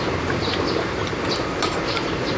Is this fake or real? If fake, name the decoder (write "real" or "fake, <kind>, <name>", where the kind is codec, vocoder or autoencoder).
real